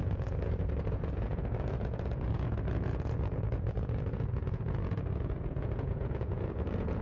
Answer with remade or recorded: remade